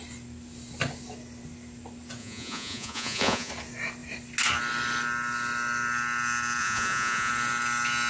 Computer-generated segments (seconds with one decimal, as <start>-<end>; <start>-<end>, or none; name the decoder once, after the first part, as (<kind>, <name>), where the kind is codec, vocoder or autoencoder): 2.2-3.5 (vocoder, Vocos); 6.6-7.3

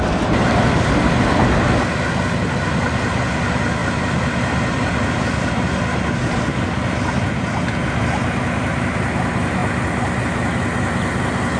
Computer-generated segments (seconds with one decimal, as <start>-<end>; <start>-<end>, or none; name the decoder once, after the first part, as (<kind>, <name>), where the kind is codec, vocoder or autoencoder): none